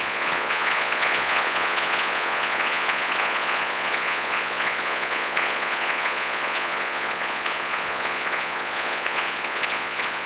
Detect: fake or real fake